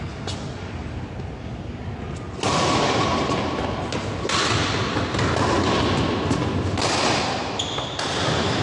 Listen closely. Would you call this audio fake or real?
real